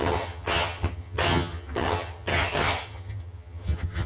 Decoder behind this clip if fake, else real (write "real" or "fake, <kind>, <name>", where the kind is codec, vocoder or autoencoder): fake, vocoder, HiFi-GAN